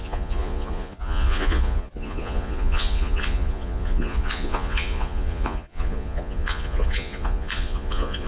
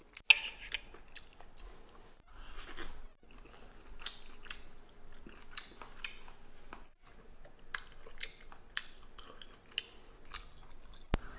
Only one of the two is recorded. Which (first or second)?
second